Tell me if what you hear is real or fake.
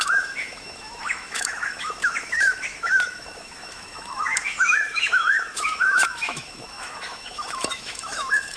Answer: fake